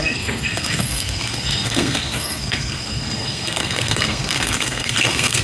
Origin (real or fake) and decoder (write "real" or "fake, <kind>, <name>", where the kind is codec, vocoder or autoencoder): fake, codec, SNAC